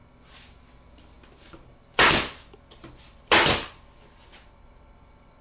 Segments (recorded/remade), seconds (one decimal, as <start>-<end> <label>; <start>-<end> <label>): 0.0-5.4 recorded